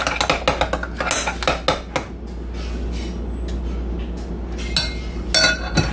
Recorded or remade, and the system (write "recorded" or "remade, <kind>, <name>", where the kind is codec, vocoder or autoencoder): recorded